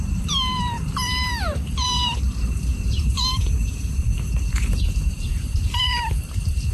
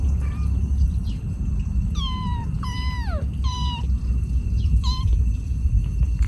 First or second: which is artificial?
first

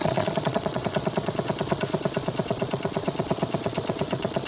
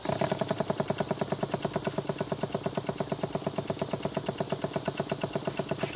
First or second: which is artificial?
first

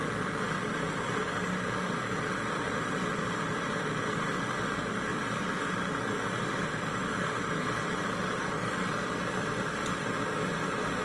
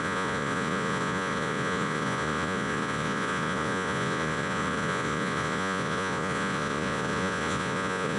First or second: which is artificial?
second